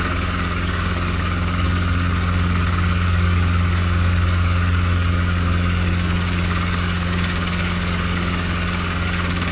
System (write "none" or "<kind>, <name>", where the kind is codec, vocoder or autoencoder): codec, DAC